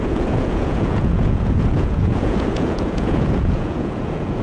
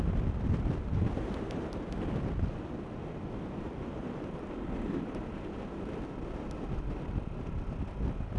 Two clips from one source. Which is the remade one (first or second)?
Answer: first